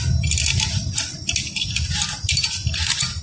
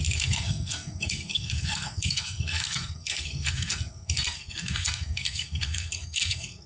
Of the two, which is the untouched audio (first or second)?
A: first